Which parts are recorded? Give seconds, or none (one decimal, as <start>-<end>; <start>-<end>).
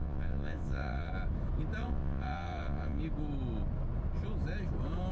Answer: 1.1-1.8; 3.0-5.1